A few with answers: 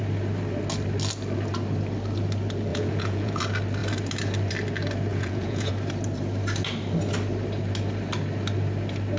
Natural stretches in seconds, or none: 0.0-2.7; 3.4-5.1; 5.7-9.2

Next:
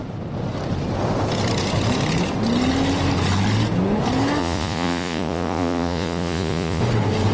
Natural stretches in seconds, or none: 0.0-4.4; 6.8-7.3

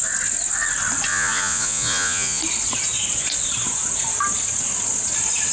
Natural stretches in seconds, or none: 0.0-1.1; 2.4-5.5

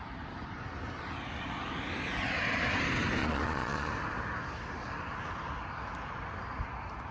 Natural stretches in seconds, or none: 0.0-3.2; 3.9-7.1

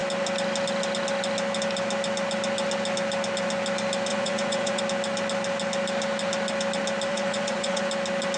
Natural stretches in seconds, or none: 0.0-4.1; 4.8-7.1; 7.9-8.4

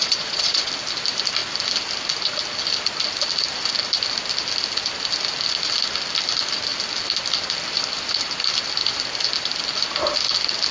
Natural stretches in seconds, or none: 0.7-10.7

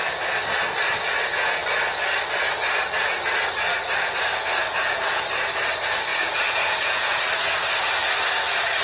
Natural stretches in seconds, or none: 0.0-4.3; 5.2-6.1; 7.2-8.8

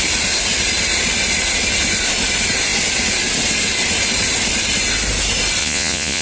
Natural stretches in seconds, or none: 0.0-5.6